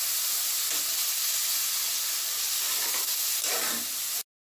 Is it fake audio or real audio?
real